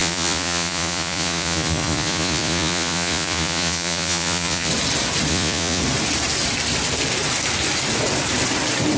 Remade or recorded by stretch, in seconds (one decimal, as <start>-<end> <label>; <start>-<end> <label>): 0.0-4.7 remade; 4.7-5.3 recorded; 5.3-5.8 remade; 5.8-9.0 recorded